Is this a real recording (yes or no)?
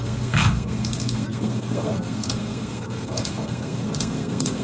no